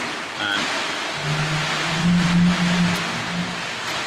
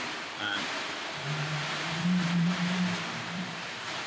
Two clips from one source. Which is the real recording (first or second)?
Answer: first